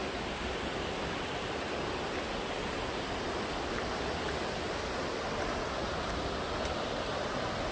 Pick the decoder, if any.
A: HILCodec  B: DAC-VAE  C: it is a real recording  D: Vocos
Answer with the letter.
C